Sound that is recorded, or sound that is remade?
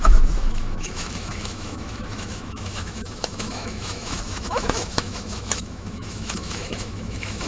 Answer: remade